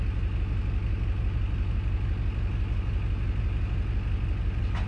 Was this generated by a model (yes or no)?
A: no